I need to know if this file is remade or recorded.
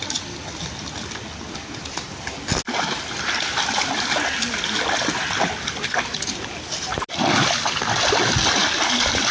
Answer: recorded